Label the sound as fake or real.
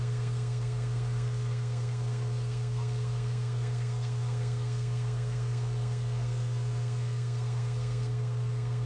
fake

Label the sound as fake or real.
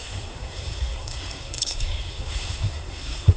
fake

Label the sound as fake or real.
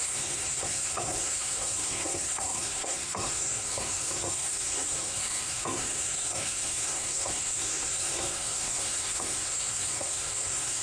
fake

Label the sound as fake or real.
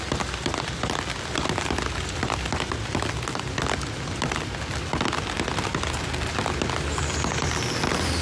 real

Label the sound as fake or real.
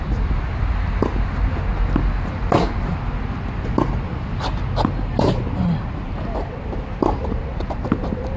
real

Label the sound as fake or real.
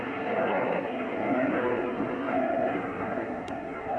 fake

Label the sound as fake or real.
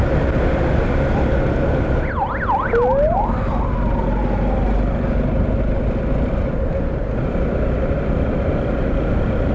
real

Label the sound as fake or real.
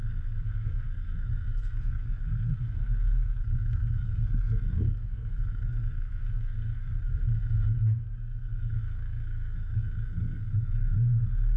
fake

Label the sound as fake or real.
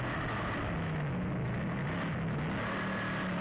real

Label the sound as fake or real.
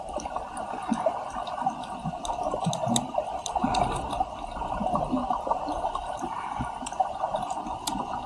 real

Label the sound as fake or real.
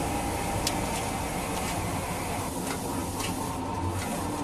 real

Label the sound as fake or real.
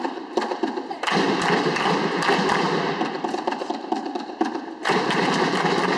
real